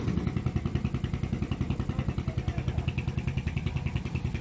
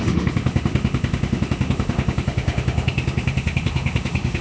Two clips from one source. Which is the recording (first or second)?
first